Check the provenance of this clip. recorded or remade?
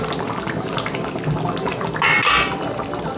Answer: recorded